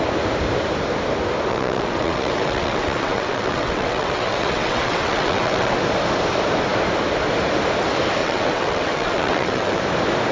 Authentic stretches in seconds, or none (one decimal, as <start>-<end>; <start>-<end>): 0.0-1.5; 5.8-8.2; 9.8-10.3